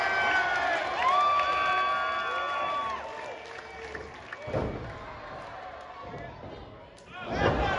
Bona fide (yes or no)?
yes